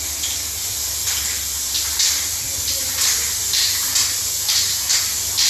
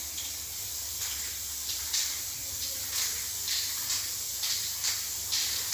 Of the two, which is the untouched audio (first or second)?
first